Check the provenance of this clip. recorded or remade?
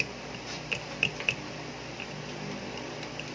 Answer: recorded